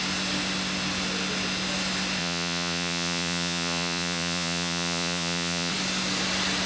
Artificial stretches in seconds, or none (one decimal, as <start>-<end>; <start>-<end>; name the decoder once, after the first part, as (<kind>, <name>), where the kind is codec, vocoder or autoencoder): 2.2-5.7 (vocoder, Vocos)